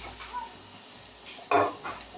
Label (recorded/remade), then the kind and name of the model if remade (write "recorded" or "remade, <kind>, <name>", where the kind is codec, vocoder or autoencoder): recorded